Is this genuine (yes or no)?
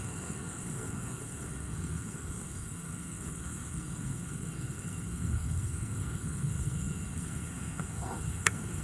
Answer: no